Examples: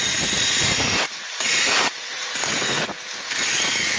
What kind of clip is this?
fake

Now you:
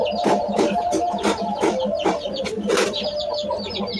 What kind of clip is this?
real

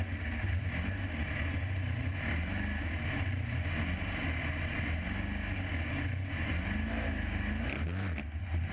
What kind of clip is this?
real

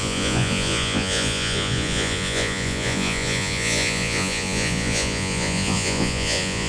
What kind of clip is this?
fake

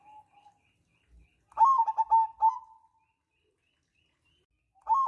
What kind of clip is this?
real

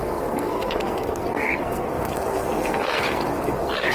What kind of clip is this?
fake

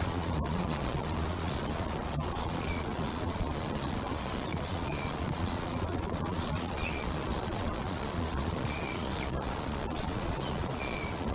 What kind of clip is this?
fake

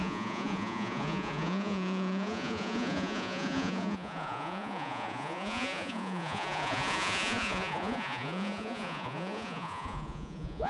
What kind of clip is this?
fake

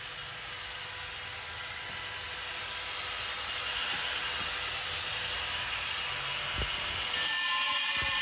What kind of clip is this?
real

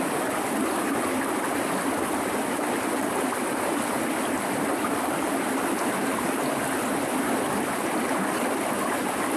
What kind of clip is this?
real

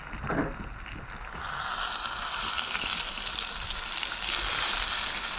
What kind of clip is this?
real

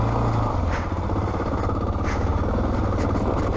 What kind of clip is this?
real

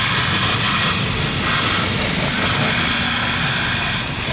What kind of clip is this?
real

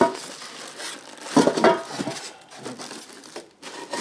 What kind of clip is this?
real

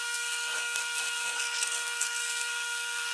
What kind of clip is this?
fake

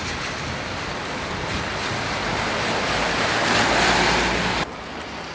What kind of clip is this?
real